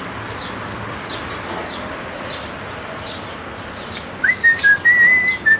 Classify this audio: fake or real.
real